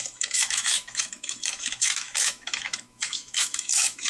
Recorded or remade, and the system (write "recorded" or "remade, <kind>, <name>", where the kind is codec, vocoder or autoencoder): remade, autoencoder, DAC-VAE